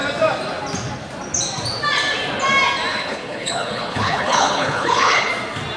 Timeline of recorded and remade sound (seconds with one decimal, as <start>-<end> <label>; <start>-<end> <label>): 0.0-2.9 recorded; 2.9-5.3 remade; 5.3-5.8 recorded